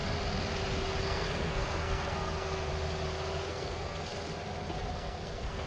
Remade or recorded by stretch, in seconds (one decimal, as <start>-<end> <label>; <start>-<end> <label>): 0.0-1.0 recorded; 1.0-2.7 remade; 2.7-3.5 recorded; 3.5-4.1 remade; 4.1-4.9 recorded; 4.9-5.7 remade